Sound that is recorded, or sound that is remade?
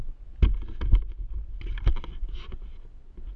recorded